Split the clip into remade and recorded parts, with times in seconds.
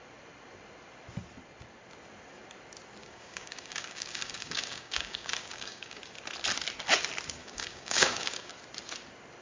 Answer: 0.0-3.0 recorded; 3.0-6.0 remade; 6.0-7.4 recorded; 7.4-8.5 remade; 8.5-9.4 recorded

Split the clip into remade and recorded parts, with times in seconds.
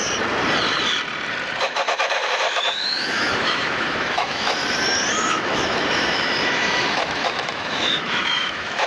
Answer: 0.0-1.6 recorded; 1.6-4.6 remade; 4.6-5.3 recorded; 5.3-8.9 remade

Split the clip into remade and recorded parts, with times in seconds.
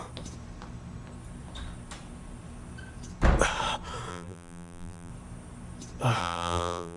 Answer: 0.0-4.1 recorded; 4.1-5.1 remade; 5.1-6.2 recorded; 6.2-7.0 remade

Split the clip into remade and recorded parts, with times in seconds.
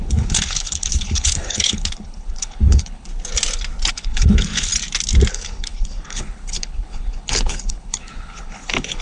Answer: 0.0-3.1 remade; 3.1-3.9 recorded; 3.9-4.7 remade; 4.7-5.3 recorded; 5.3-9.0 remade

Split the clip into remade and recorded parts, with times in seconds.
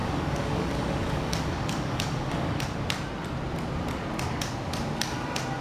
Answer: 0.0-2.6 remade; 2.6-5.6 recorded